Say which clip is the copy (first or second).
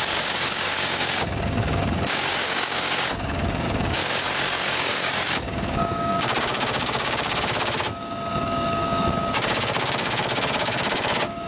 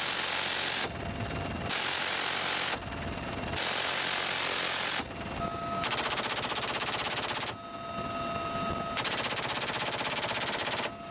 first